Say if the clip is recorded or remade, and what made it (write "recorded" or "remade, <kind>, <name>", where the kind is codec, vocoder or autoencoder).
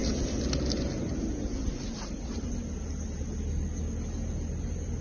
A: recorded